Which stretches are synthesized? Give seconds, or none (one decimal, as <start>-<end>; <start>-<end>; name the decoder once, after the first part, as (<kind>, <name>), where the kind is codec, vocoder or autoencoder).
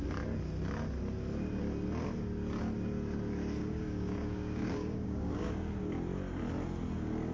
3.6-5.9 (codec, DAC)